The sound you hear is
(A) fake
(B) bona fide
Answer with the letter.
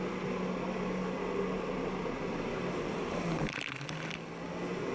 B